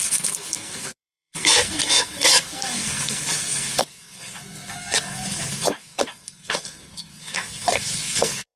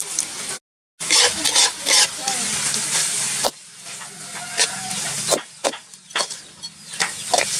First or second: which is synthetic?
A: first